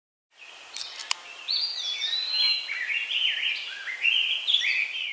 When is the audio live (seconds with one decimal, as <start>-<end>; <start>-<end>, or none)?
0.0-5.1